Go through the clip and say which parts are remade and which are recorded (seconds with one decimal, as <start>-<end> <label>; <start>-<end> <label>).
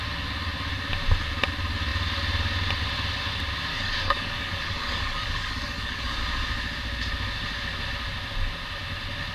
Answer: 0.0-3.7 recorded; 3.7-6.2 remade; 6.2-9.3 recorded